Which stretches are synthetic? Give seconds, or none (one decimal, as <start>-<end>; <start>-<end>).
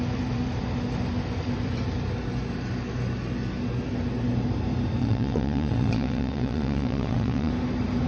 5.0-7.5